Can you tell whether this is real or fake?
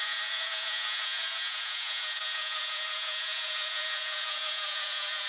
fake